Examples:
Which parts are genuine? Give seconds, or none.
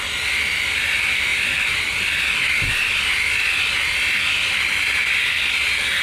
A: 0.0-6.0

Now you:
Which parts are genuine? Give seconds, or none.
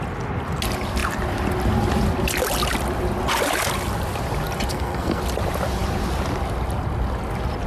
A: 0.0-4.7; 5.2-7.7